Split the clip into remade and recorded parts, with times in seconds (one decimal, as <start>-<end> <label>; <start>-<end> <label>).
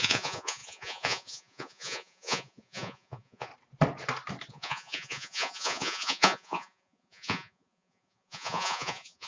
0.0-3.5 remade; 3.5-4.5 recorded; 4.5-9.3 remade